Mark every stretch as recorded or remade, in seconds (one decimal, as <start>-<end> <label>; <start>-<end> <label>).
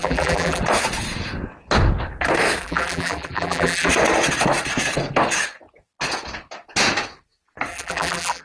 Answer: 0.0-0.6 remade; 0.6-2.6 recorded; 2.6-3.9 remade; 3.9-7.7 recorded; 7.7-8.4 remade